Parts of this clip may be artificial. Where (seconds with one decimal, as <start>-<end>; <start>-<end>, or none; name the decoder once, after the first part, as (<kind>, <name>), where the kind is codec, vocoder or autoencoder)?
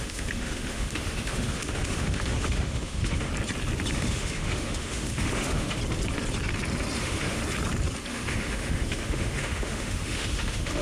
0.0-3.3 (autoencoder, DAC-VAE); 3.9-5.8; 7.0-7.4; 8.1-10.8